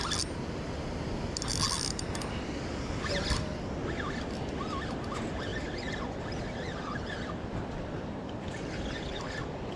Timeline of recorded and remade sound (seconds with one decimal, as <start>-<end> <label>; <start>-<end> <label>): 0.0-9.8 recorded